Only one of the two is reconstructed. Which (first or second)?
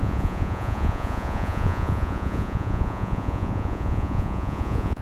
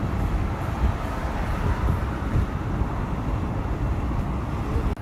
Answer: first